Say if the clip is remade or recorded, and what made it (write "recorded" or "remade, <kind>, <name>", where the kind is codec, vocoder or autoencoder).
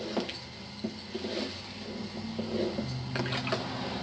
recorded